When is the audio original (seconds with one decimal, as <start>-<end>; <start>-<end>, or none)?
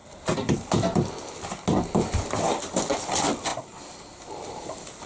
0.0-5.1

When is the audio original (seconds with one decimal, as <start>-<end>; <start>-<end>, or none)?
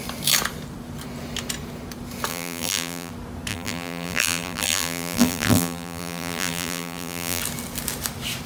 0.0-2.3; 3.1-3.5; 7.4-8.5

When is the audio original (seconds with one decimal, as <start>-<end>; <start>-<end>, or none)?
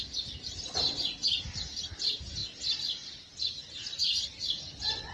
0.0-5.1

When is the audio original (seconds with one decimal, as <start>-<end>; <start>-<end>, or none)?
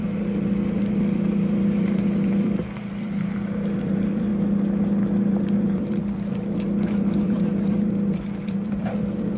4.3-5.3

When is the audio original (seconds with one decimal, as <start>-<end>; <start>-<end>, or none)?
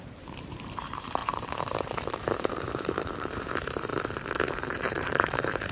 3.9-4.6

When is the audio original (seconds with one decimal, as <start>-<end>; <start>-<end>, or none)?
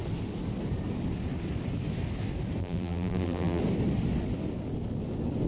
0.0-2.6; 3.6-5.5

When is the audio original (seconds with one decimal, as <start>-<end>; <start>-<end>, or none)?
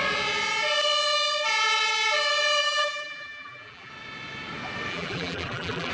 0.0-2.6; 3.9-4.9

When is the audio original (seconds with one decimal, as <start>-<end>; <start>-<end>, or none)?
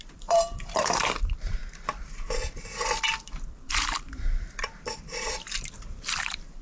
1.6-3.2